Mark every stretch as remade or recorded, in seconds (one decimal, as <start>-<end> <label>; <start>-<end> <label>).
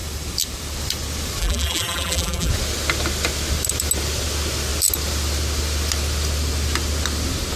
0.0-1.4 recorded; 1.4-2.5 remade; 2.5-7.6 recorded